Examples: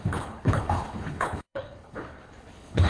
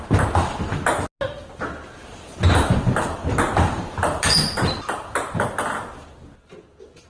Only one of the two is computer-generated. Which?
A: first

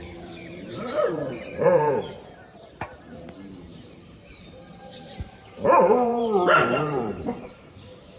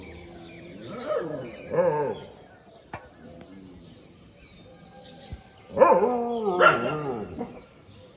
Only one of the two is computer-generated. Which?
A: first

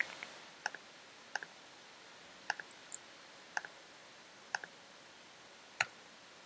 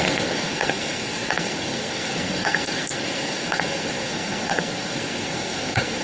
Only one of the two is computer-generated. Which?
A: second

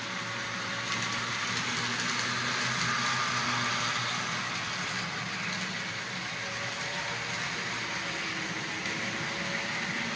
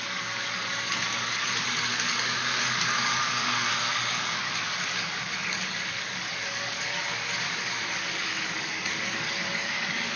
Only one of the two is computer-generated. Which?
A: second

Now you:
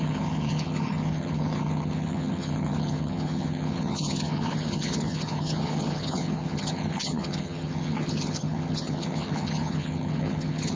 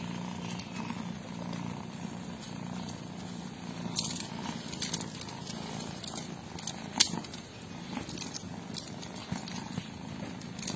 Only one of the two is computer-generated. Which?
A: first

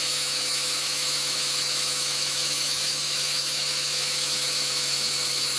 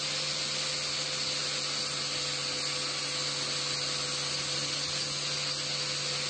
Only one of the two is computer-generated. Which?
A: first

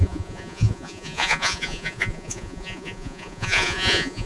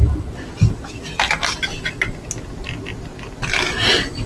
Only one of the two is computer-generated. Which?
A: first